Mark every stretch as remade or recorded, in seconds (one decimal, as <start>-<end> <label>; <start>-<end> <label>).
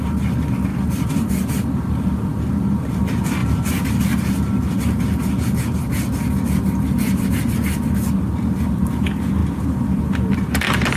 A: 0.0-0.7 recorded; 0.7-2.9 remade; 2.9-3.4 recorded; 3.4-4.0 remade; 4.0-11.0 recorded